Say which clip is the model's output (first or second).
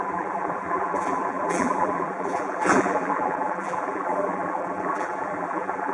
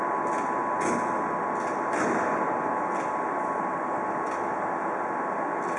first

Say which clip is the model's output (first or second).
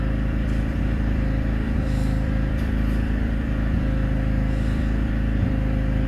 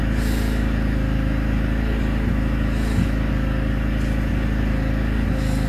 first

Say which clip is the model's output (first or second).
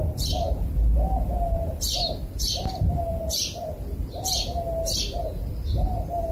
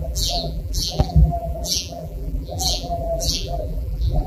second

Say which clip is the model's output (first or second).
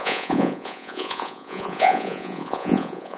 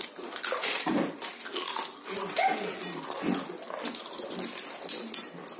first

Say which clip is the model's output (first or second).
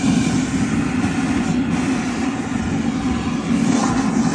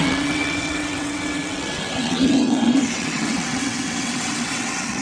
second